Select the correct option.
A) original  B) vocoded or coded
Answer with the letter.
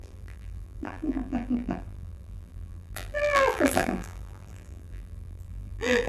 B